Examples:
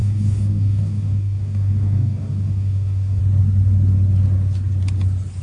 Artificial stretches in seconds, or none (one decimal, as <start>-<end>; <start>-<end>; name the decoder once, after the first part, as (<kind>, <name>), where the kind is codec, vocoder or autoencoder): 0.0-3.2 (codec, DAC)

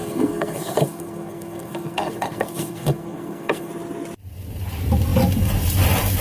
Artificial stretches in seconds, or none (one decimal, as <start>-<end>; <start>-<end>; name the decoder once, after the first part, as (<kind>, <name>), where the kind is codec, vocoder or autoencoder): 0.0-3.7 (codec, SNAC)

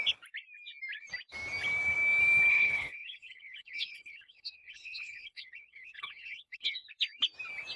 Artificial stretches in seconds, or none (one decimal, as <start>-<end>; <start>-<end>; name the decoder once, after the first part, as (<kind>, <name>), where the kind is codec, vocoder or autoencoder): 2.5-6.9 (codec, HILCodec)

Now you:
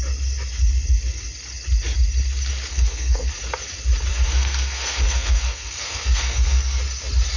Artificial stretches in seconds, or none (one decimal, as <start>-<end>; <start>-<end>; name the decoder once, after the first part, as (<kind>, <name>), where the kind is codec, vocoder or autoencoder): 2.7-3.3 (codec, SNAC); 4.1-6.8

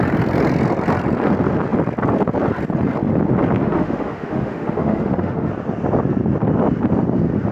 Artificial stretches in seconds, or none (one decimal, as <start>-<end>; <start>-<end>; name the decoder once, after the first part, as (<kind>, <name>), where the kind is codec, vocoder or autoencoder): 3.6-5.5 (autoencoder, DAC-VAE)

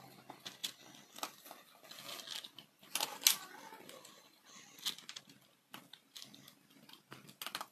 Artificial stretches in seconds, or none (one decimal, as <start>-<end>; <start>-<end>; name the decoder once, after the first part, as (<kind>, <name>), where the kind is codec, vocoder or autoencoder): none

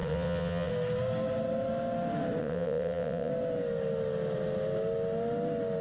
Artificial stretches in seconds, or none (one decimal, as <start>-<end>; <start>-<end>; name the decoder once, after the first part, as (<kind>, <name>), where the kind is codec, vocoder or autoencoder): 0.0-0.7 (vocoder, WaveNeXt); 2.4-3.3

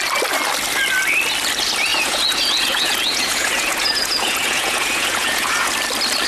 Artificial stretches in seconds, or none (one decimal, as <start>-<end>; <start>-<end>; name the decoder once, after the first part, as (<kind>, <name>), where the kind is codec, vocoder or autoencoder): 1.9-5.7 (vocoder, Vocos)